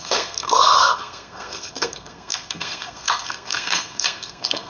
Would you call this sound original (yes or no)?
no